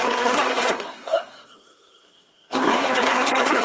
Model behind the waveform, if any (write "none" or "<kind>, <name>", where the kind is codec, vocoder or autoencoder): codec, SNAC